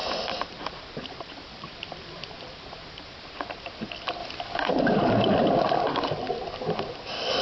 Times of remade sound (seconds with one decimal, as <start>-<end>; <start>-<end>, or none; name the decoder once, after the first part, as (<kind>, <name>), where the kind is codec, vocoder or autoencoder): 0.0-3.7 (vocoder, BigVGAN v2)